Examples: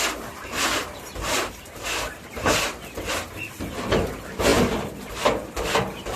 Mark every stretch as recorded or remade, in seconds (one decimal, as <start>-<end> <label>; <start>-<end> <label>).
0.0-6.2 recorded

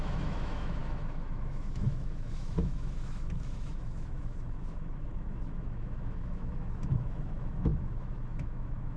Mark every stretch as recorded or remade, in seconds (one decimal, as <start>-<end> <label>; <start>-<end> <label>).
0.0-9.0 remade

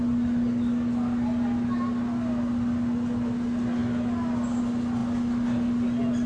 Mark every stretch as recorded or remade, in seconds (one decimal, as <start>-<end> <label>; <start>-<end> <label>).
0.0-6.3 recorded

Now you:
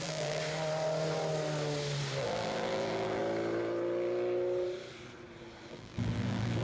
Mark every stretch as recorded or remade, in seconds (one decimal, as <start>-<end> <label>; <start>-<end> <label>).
0.0-0.4 remade; 0.4-2.2 recorded; 2.2-3.2 remade; 3.2-5.7 recorded; 5.7-6.6 remade

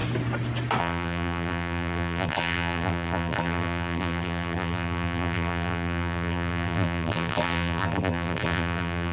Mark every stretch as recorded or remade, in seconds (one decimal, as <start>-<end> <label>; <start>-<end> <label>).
0.0-0.8 recorded; 0.8-9.1 remade